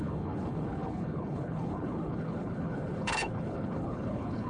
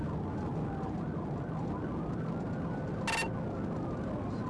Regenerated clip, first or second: first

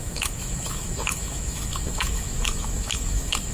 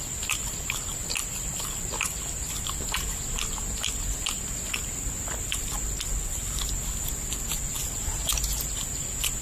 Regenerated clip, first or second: first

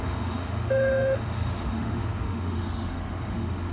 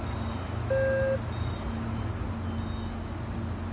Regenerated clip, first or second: first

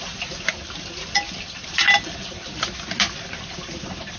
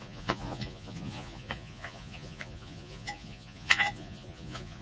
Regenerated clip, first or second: second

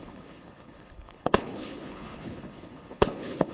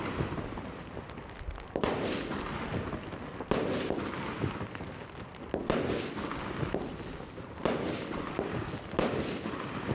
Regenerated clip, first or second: first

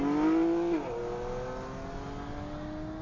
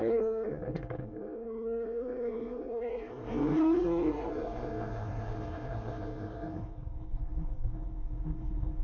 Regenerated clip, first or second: second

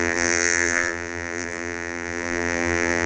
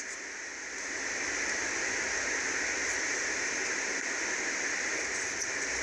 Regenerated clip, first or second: first